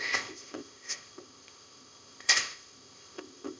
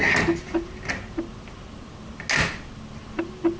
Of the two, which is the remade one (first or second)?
first